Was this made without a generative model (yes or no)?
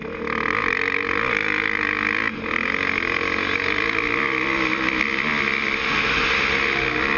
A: yes